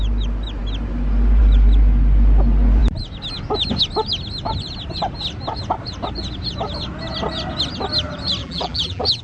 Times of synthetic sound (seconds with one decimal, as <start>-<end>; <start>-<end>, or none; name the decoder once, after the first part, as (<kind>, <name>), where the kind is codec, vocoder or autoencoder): 8.4-9.2 (vocoder, BigVGAN v2)